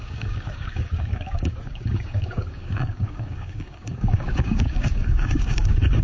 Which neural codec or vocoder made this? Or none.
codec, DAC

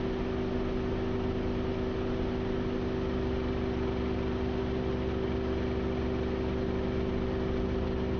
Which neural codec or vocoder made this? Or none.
none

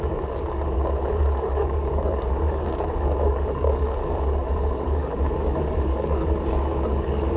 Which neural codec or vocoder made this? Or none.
codec, DAC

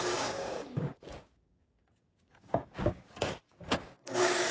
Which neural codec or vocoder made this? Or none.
codec, DAC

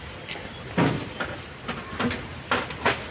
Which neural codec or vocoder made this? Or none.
none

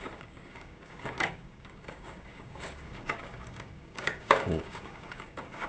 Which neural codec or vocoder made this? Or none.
codec, DAC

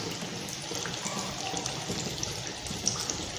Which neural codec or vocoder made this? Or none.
none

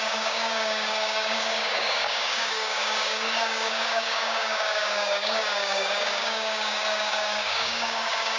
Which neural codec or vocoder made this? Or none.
codec, DAC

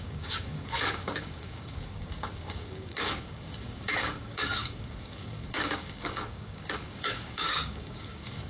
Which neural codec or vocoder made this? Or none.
codec, DAC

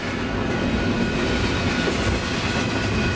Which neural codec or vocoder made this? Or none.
none